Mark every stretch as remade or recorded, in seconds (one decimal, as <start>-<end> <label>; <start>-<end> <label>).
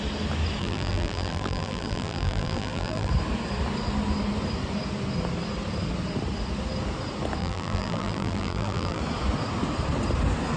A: 0.0-0.6 recorded; 0.6-3.1 remade; 3.1-7.4 recorded; 7.4-9.0 remade; 9.0-10.6 recorded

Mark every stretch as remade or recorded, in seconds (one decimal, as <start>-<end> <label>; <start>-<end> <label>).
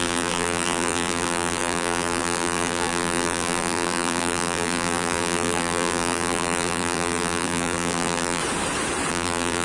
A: 0.0-8.4 remade; 8.4-9.1 recorded; 9.1-9.6 remade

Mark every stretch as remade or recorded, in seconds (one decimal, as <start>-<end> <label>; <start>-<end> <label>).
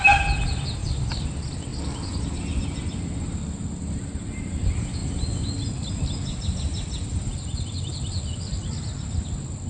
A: 0.0-9.7 recorded